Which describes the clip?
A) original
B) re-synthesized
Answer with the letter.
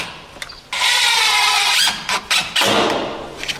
A